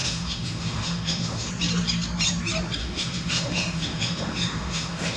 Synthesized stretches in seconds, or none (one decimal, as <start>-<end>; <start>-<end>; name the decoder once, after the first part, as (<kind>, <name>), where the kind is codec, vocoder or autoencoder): 0.0-1.5 (autoencoder, DAC-VAE); 2.8-5.2